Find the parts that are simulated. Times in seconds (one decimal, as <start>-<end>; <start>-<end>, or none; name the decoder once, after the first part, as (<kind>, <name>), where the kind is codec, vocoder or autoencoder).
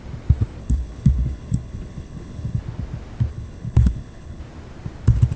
0.6-2.6 (codec, HILCodec); 3.3-4.4